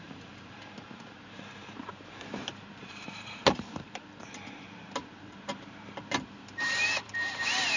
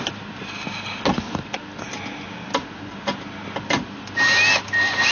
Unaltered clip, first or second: second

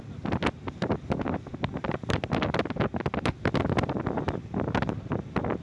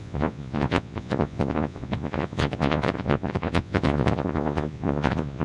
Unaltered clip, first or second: first